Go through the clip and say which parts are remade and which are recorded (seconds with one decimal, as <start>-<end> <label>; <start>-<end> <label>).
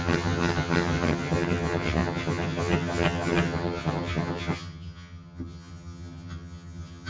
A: 0.0-7.1 remade